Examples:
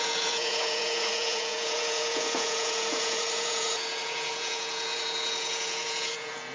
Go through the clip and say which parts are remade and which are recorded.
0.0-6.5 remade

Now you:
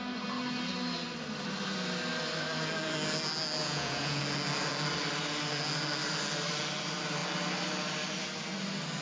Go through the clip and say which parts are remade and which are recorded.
0.0-3.6 recorded; 3.6-4.2 remade; 4.2-9.0 recorded

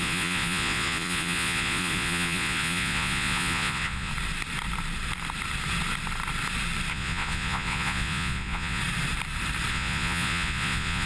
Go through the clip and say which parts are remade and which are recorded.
0.0-4.1 remade; 4.1-6.9 recorded; 6.9-8.8 remade; 8.8-9.7 recorded; 9.7-11.1 remade

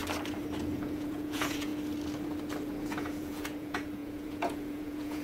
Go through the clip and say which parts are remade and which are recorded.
0.0-0.6 recorded; 0.6-1.7 remade; 1.7-2.7 recorded; 2.7-5.2 remade

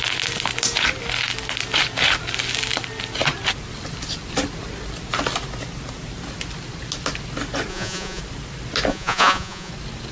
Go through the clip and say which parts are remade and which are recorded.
0.0-7.7 recorded; 7.7-8.2 remade; 8.2-8.9 recorded; 8.9-9.7 remade; 9.7-10.1 recorded

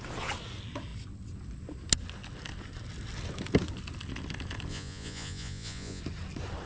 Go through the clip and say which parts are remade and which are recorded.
0.0-4.7 recorded; 4.7-6.0 remade; 6.0-6.7 recorded

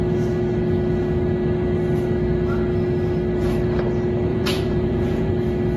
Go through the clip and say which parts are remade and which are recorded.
0.0-4.3 recorded; 4.3-5.3 remade; 5.3-5.8 recorded